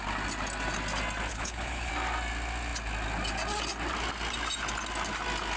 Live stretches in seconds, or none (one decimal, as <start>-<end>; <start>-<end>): 0.0-1.3; 1.9-5.6